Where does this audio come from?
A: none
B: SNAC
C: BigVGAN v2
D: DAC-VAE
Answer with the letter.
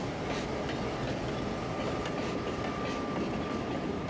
A